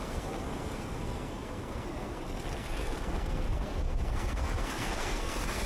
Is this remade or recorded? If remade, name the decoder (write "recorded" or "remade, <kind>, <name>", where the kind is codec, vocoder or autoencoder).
remade, codec, SNAC